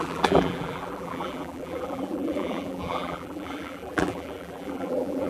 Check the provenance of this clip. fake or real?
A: fake